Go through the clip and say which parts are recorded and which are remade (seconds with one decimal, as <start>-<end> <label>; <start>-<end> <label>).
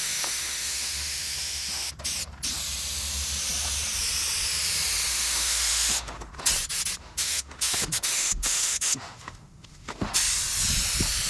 0.0-1.9 remade; 1.9-5.1 recorded; 5.1-6.3 remade; 6.3-7.0 recorded; 7.0-10.1 remade; 10.1-11.3 recorded